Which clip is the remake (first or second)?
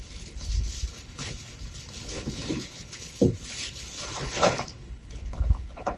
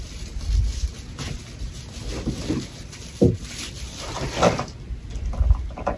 first